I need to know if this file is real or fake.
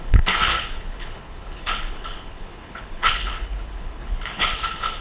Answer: fake